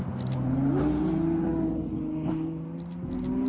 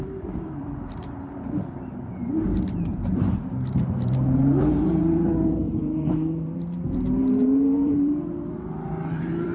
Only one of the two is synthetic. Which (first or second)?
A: second